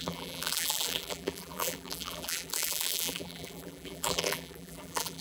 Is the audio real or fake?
fake